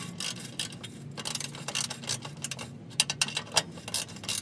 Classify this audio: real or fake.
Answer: real